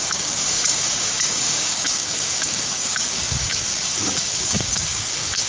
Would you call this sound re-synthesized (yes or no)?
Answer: yes